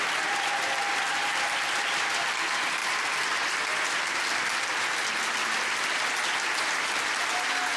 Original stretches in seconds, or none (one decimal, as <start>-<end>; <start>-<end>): 0.0-7.8